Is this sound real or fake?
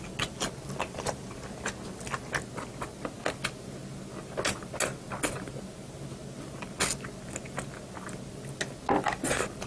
real